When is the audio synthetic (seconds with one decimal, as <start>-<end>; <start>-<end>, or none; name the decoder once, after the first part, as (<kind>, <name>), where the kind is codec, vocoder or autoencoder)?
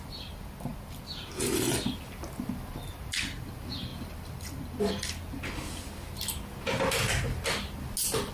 none